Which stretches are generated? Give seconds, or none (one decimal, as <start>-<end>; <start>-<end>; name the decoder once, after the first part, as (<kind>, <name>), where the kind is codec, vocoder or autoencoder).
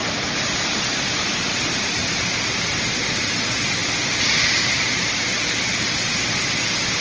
0.0-7.0 (vocoder, BigVGAN v2)